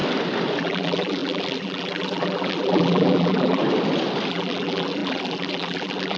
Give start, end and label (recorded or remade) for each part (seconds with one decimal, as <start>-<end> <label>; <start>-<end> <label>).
0.0-0.6 recorded; 0.6-3.6 remade; 3.6-4.3 recorded; 4.3-6.2 remade